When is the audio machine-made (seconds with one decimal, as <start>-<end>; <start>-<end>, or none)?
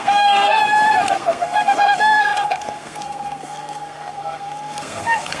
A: 0.0-0.6; 1.1-5.4